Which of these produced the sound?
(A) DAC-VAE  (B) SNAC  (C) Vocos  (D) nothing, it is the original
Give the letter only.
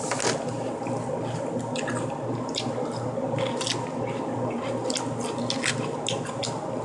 D